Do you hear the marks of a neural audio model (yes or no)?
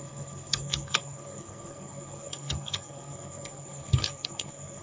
yes